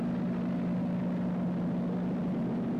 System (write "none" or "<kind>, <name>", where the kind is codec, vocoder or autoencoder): none